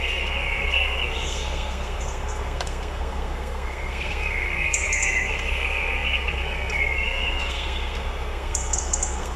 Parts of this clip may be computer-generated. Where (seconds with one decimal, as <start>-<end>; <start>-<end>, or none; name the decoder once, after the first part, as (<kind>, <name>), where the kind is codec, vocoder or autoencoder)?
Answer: 0.0-9.4 (codec, SNAC)